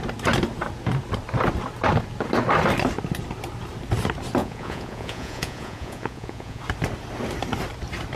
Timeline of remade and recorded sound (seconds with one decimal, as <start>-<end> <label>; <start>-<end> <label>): 0.0-4.4 recorded; 4.4-6.6 remade; 6.6-8.2 recorded